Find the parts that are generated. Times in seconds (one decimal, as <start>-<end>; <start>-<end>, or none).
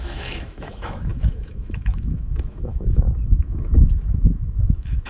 0.0-5.1